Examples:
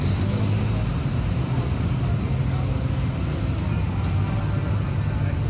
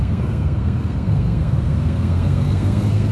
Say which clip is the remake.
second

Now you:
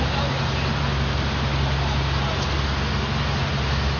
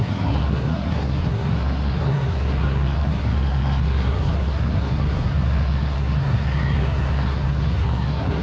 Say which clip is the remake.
second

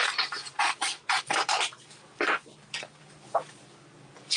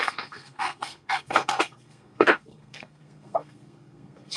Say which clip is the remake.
second